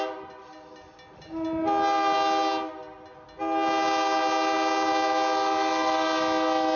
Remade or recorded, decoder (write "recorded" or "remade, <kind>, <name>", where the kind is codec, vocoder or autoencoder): recorded